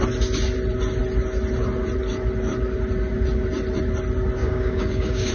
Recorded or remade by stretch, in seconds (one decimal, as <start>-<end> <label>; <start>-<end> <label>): 0.0-4.4 recorded; 4.4-5.3 remade